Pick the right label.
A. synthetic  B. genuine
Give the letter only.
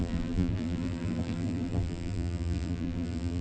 A